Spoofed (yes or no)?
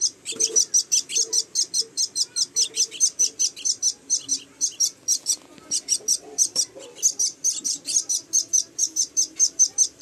no